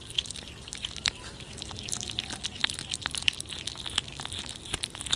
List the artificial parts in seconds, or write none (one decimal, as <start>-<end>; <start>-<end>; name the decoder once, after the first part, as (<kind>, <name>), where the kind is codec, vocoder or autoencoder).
none